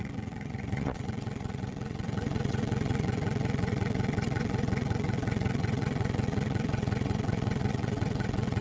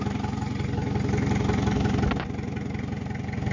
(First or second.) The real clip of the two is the second